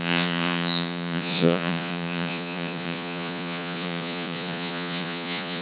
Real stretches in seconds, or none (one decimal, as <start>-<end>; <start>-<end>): none